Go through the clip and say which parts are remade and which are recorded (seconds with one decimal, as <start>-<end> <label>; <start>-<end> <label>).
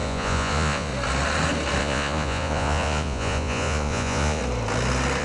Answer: 0.0-0.9 remade; 0.9-1.8 recorded; 1.8-4.4 remade; 4.4-5.2 recorded